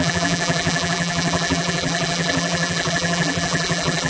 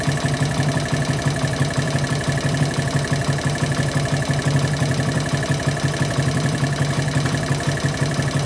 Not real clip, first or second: first